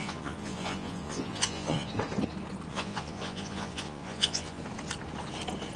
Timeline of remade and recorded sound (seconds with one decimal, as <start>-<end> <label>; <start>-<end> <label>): 0.0-1.9 remade; 1.9-2.7 recorded; 2.7-4.6 remade; 4.6-5.8 recorded